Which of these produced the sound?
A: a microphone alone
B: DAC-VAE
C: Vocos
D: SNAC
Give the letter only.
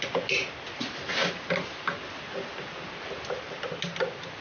A